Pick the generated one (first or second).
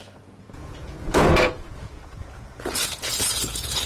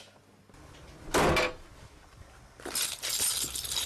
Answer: first